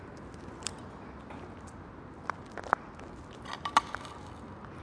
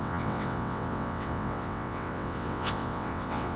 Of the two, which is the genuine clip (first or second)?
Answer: first